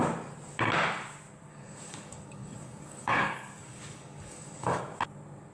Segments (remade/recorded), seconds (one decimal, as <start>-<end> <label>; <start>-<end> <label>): 0.0-1.5 recorded; 1.5-4.8 remade; 4.8-5.5 recorded